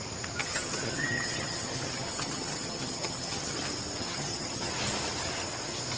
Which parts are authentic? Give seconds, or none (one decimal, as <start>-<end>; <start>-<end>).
0.0-0.4; 3.6-4.0; 4.7-6.0